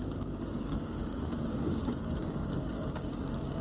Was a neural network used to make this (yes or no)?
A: yes